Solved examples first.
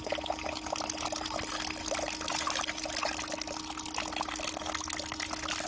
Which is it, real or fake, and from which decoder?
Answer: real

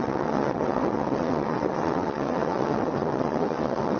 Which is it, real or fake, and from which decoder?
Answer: fake, vocoder, WaveNeXt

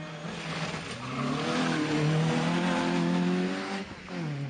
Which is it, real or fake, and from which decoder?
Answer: real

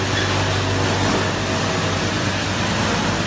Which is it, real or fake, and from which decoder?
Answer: real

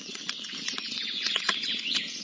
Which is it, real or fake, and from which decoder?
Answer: fake, vocoder, WaveNeXt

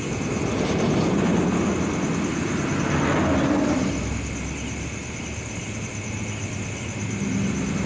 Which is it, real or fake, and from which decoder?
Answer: real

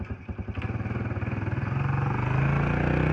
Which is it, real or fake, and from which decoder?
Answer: real